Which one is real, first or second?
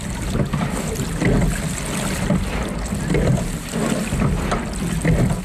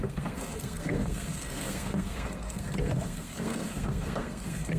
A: first